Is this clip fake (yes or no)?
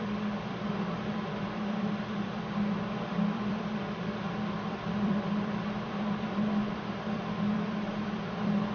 yes